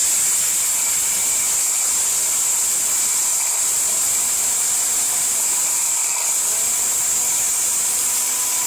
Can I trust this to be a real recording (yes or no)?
yes